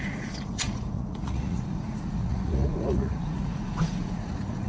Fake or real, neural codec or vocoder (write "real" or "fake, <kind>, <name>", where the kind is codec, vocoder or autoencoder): fake, vocoder, Vocos